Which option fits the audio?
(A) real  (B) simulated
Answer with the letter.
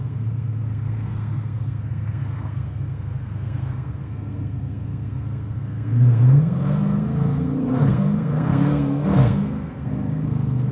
B